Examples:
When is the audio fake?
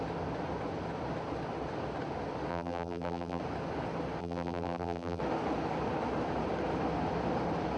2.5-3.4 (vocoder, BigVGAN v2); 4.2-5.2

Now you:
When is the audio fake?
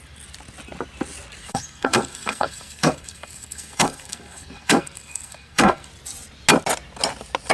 1.4-5.9 (codec, SNAC)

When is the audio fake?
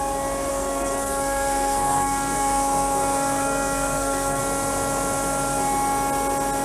0.5-4.4 (codec, SNAC)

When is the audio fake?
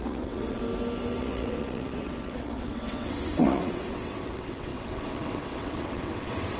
0.0-0.6 (vocoder, WaveNeXt); 1.2-6.6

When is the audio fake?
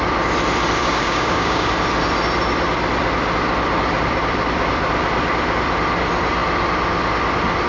0.8-1.7 (codec, DAC)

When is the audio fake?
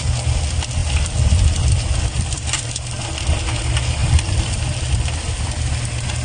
0.8-2.7 (vocoder, BigVGAN v2); 4.0-4.6